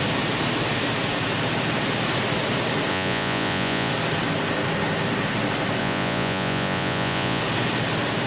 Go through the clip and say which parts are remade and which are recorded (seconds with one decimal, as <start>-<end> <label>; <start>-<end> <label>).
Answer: 0.0-2.9 recorded; 2.9-3.9 remade; 3.9-5.8 recorded; 5.8-7.4 remade; 7.4-8.3 recorded